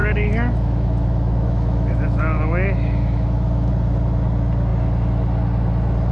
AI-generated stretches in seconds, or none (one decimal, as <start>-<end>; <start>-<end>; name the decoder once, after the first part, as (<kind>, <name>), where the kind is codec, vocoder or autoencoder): 0.0-3.7 (autoencoder, DAC-VAE)